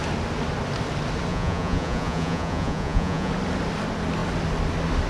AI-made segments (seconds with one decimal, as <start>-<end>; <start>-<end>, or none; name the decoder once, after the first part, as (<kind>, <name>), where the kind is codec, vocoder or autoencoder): 1.3-3.3 (vocoder, Vocos)